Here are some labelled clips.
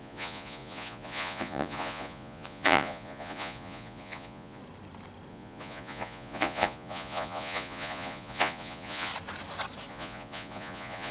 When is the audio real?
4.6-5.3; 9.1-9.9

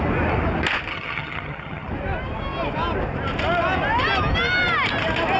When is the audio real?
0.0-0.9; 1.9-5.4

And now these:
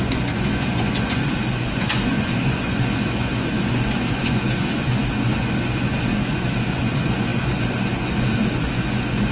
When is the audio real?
none

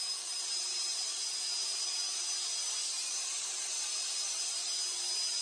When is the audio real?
0.0-5.4

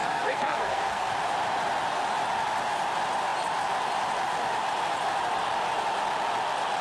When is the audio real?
1.1-6.8

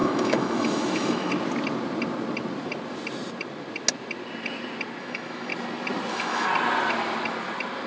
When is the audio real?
1.3-5.0; 5.5-6.1; 6.5-7.9

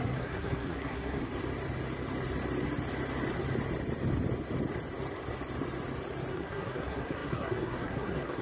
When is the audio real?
1.3-6.3

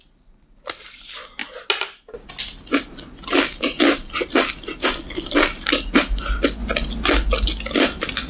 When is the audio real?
0.0-8.3